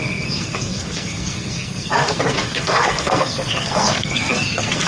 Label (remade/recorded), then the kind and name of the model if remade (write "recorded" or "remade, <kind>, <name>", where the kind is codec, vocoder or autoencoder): remade, codec, SNAC